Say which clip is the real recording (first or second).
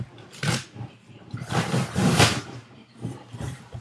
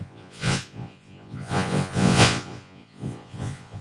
first